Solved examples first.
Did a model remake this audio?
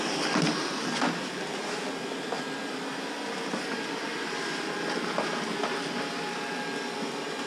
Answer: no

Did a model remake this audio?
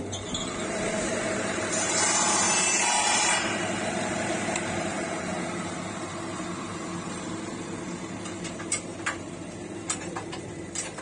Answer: yes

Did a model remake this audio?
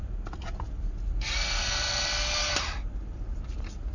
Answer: no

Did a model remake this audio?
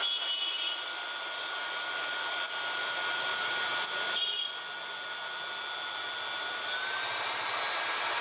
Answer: no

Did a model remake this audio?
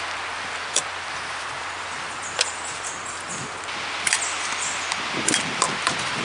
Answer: no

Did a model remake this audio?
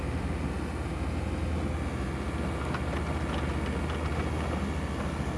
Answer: no